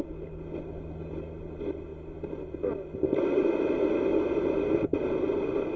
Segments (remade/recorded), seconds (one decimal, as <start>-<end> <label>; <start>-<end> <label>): 0.0-5.8 recorded